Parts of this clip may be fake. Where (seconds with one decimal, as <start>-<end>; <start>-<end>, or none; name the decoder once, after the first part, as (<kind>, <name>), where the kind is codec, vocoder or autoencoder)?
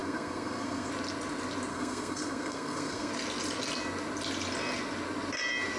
0.0-0.9 (codec, SNAC); 1.7-3.1